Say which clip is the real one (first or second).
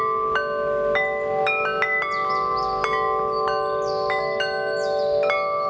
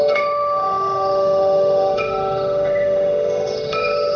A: first